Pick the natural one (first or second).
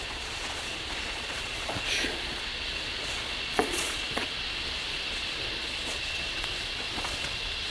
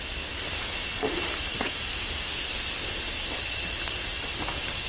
second